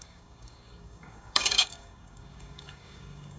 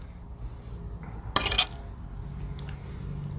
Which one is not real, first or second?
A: first